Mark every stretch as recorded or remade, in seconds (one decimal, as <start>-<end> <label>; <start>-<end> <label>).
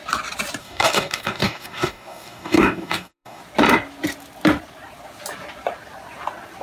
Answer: 0.0-0.6 recorded; 0.6-3.4 remade; 3.4-6.6 recorded